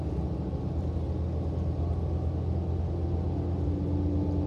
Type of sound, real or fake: real